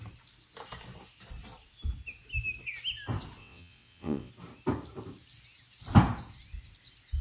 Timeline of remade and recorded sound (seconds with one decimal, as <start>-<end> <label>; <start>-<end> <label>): 0.0-3.4 recorded; 3.4-4.3 remade; 4.3-7.2 recorded